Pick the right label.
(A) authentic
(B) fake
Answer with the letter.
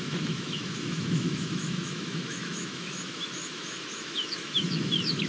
B